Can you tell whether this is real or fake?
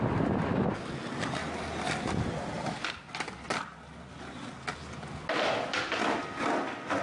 real